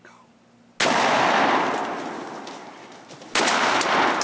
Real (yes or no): yes